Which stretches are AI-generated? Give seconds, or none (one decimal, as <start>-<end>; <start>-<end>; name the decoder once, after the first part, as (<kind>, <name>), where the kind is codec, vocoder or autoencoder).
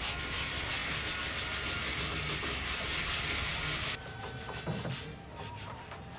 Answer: none